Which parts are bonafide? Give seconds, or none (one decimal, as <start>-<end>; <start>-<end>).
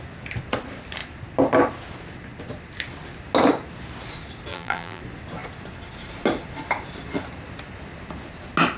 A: 0.0-4.5; 5.0-8.8